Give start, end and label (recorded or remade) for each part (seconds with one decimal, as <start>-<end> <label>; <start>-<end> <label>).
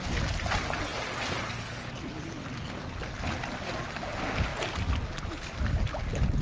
0.0-6.4 recorded